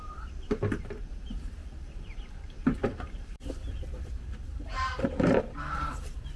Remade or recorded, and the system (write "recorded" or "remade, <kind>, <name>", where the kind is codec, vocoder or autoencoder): remade, vocoder, BigVGAN v2